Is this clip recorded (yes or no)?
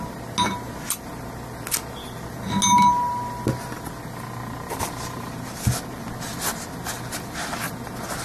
yes